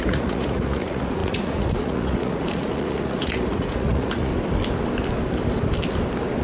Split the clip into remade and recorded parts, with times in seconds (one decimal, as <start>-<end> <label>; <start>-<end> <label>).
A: 0.0-4.3 remade; 4.3-6.4 recorded